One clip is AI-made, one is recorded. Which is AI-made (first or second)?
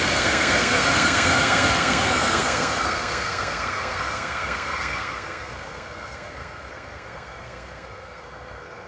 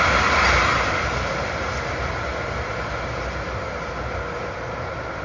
first